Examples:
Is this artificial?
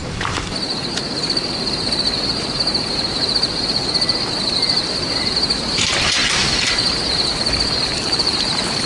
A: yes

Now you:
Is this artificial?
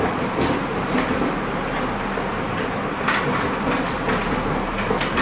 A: no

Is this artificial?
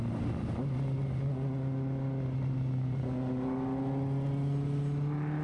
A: no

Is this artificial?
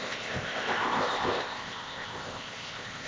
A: yes